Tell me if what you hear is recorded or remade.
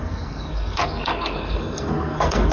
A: remade